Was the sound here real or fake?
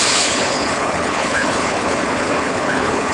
fake